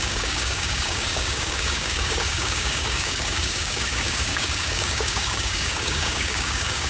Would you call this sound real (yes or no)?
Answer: no